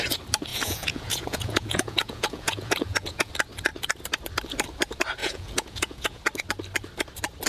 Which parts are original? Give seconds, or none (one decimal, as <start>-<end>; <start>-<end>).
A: 0.0-0.5; 3.3-5.2; 6.2-7.5